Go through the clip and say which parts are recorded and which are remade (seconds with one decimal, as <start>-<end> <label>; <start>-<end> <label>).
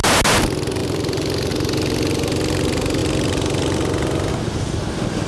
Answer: 0.0-0.8 recorded; 0.8-1.5 remade; 1.5-5.3 recorded